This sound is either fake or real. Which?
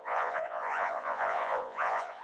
fake